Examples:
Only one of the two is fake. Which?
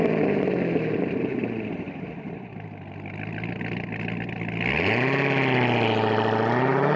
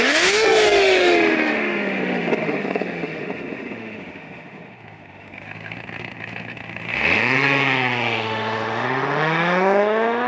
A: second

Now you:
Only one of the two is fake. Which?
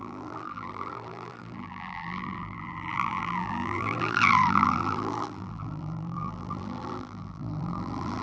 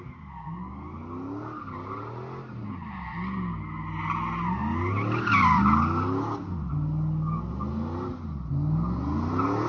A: first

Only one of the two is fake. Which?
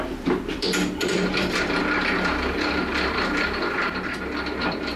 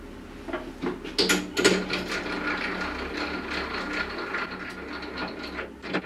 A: first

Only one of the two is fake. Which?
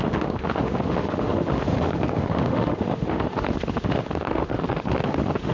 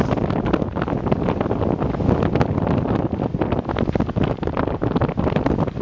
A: first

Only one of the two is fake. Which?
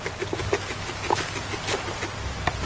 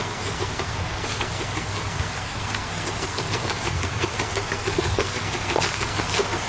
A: second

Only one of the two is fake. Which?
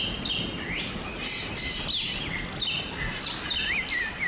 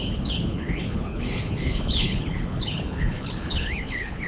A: second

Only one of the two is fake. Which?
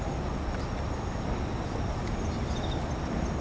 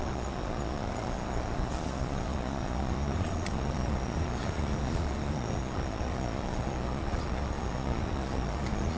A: second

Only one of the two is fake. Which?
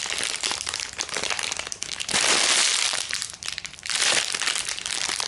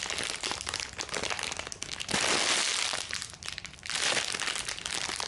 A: first